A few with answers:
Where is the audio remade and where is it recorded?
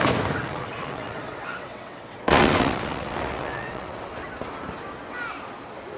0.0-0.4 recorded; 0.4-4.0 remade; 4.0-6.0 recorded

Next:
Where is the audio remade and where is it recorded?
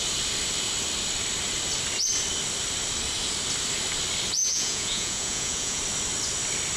0.0-4.4 recorded; 4.4-5.8 remade; 5.8-6.8 recorded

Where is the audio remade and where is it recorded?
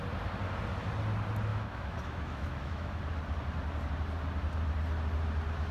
0.0-1.5 recorded; 1.5-3.0 remade; 3.0-5.7 recorded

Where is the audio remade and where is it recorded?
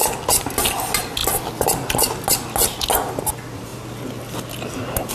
0.0-5.1 recorded